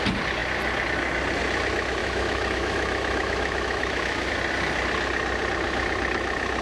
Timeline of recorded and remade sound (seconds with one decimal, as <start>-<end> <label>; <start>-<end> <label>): 0.0-2.0 recorded; 2.0-4.3 remade; 4.3-6.6 recorded